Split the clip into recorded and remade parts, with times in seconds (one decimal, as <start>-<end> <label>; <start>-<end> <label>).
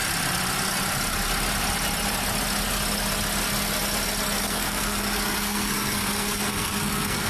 0.0-4.4 recorded; 4.4-7.3 remade